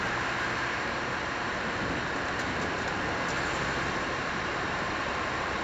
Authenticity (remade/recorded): remade